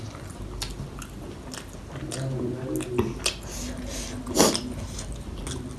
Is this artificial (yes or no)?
no